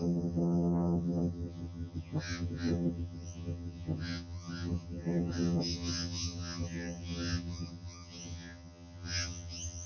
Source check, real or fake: fake